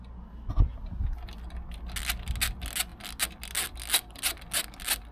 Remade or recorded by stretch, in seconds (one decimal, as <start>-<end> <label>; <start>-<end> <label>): 0.0-5.1 recorded